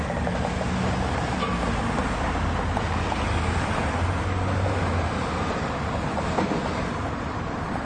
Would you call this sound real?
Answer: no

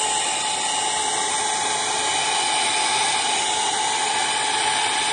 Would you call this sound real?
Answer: yes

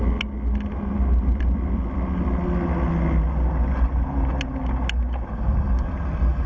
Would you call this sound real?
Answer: yes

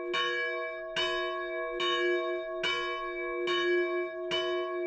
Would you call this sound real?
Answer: yes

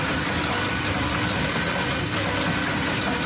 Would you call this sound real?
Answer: yes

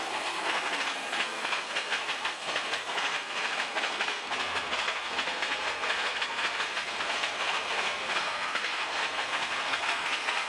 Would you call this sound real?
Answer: no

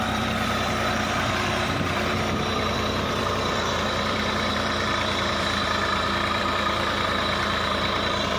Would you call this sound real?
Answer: no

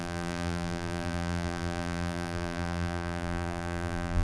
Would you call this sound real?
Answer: no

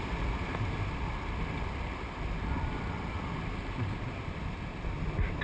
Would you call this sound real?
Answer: yes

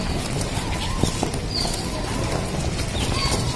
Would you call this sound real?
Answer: yes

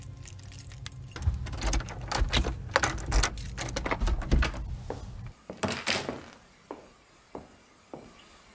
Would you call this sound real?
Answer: yes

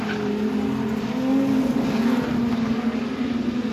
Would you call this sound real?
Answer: yes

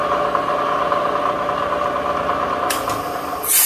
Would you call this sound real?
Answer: yes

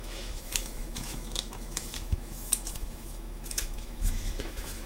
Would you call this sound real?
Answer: no